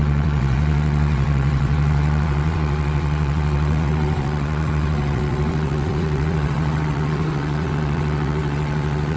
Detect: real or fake fake